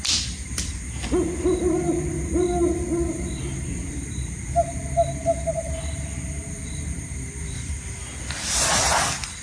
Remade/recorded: recorded